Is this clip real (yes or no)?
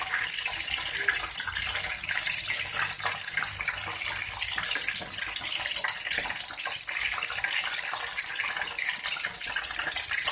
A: yes